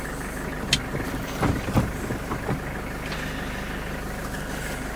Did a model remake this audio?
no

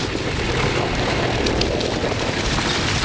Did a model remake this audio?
no